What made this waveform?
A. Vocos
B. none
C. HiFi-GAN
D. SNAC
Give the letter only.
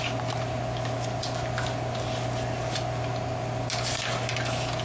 B